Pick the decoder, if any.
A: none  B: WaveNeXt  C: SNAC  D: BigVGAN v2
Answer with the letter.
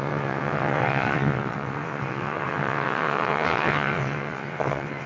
B